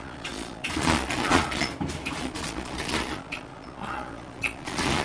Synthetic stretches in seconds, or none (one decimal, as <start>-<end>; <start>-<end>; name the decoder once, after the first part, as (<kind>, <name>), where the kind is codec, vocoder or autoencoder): 0.0-1.7 (vocoder, Vocos); 2.2-5.0